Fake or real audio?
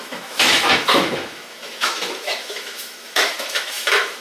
fake